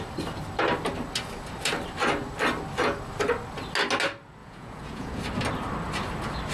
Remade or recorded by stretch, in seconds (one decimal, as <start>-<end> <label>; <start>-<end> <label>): 0.0-4.4 recorded; 4.4-5.2 remade; 5.2-6.5 recorded